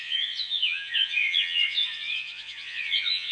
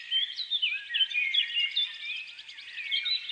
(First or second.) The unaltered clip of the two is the second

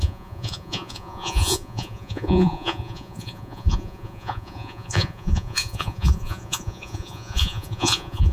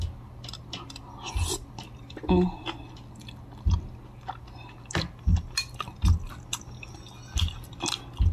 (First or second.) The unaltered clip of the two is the second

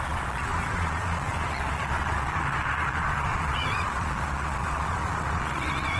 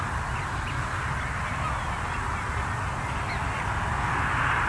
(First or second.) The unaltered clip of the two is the second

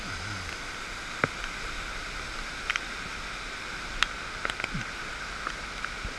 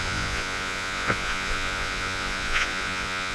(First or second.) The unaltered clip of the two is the first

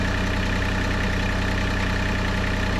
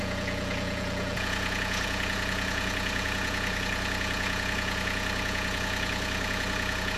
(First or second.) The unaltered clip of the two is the first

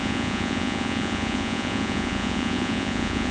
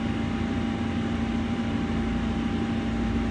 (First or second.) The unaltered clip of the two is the second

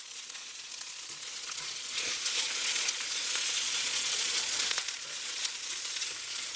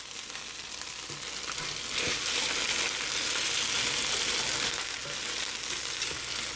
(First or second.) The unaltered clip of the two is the second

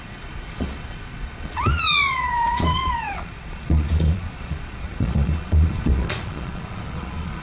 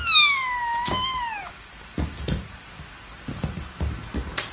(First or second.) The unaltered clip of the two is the second